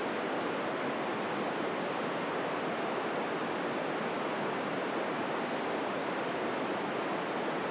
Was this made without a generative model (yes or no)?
yes